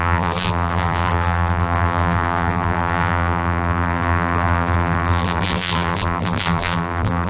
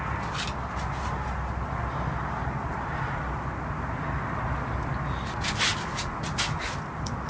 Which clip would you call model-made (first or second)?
first